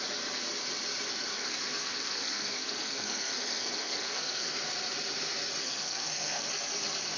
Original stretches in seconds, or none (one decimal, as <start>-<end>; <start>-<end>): 0.0-1.3; 4.6-5.6; 6.5-7.2